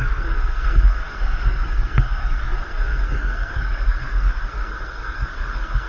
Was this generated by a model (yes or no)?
yes